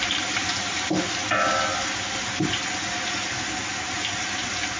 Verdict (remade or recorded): recorded